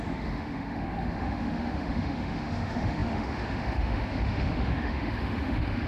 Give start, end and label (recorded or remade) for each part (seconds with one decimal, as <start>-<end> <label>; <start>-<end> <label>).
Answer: 0.0-5.9 remade